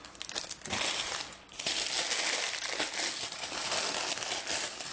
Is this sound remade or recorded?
recorded